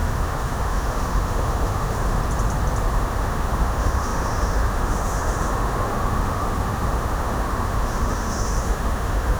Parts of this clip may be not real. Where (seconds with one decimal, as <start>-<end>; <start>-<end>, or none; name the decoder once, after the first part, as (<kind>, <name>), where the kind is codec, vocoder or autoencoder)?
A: 0.0-2.2 (autoencoder, DAC-VAE); 2.9-9.4

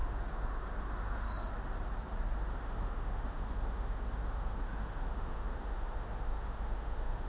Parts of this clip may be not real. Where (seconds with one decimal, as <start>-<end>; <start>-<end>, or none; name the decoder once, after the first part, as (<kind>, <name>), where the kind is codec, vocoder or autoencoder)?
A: 0.0-1.5 (autoencoder, DAC-VAE); 2.5-7.3